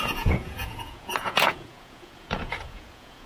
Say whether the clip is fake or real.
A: fake